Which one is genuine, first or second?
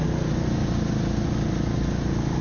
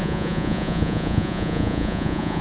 first